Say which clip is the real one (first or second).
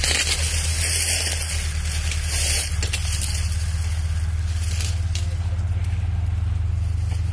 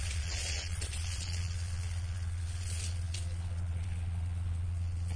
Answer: first